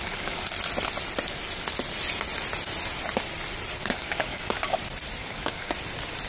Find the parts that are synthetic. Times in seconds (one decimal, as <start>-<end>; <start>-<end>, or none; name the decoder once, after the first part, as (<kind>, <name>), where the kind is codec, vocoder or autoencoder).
0.0-0.5 (codec, DAC); 3.8-4.8; 5.2-5.7